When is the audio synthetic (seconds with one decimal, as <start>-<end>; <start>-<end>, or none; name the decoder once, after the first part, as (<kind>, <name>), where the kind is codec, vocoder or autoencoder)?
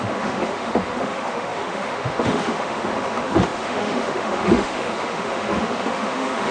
0.0-6.5 (autoencoder, DAC-VAE)